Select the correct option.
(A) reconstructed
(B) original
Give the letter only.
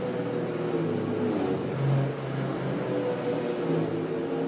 B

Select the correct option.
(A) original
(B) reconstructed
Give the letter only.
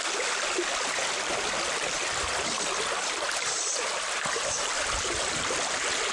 A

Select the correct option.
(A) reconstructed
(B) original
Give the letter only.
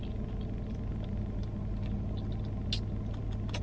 B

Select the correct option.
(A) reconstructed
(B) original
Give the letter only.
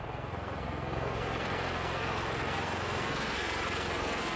A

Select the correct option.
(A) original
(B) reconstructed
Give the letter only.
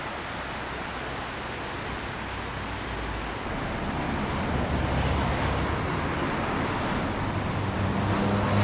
A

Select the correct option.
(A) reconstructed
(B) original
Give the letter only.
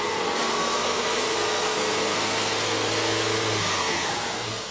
A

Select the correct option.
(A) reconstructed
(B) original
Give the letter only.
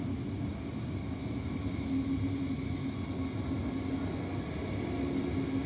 B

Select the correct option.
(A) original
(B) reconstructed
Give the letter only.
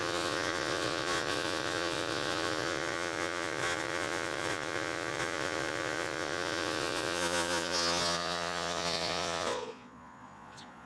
B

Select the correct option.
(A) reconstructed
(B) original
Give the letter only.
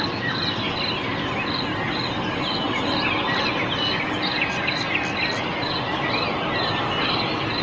B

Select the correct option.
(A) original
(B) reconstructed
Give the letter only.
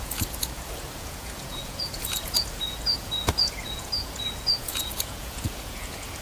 B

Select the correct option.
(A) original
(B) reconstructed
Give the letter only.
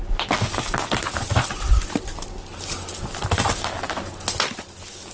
A